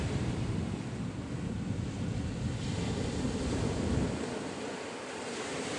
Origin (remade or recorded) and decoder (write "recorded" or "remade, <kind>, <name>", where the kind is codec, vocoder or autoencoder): recorded